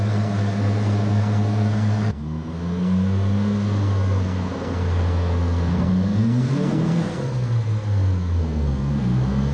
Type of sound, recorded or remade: remade